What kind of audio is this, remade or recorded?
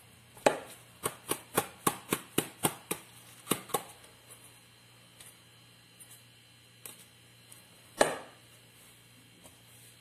recorded